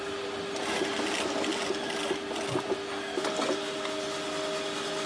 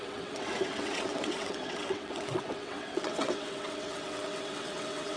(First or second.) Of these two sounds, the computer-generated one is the second